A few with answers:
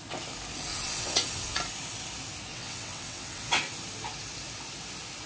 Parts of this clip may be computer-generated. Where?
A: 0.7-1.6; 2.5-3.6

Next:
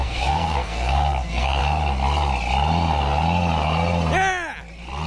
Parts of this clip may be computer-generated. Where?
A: 0.0-1.6

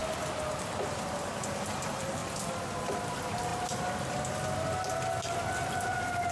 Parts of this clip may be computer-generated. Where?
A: 0.9-2.2; 2.8-6.3

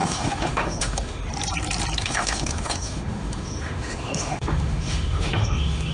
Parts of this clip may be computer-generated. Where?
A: 0.0-1.2; 2.0-5.9

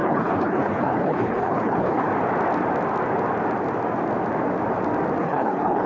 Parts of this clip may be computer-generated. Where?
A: 0.0-2.1; 5.2-5.9